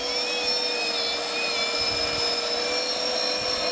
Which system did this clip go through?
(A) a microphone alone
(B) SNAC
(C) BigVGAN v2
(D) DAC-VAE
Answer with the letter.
A